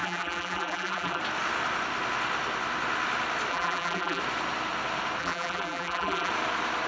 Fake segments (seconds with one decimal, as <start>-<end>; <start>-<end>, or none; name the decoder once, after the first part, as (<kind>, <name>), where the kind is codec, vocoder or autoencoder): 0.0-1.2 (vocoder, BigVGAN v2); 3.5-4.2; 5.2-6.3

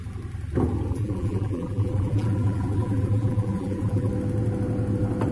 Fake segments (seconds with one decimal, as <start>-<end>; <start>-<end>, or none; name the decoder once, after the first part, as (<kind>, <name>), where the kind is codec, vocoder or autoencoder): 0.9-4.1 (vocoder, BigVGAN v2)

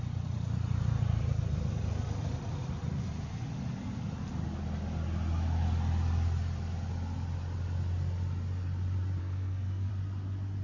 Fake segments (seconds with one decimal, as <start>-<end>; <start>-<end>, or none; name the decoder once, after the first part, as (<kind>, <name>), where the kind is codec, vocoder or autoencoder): 9.2-9.9 (codec, SNAC)